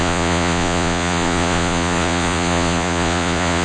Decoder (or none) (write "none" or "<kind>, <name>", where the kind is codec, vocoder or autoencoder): vocoder, Vocos